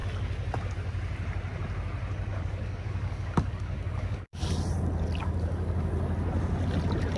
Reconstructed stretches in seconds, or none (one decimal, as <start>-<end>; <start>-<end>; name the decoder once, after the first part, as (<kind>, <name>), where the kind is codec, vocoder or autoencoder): 2.3-4.4 (codec, DAC); 5.2-5.9